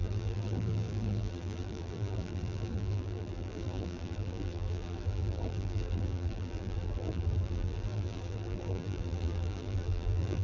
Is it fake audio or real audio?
fake